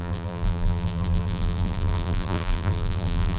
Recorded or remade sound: remade